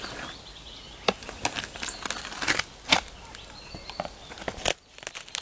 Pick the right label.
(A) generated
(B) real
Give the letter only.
B